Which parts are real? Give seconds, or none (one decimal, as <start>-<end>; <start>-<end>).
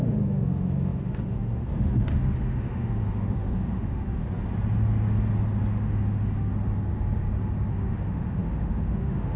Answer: 4.2-5.6; 6.5-7.7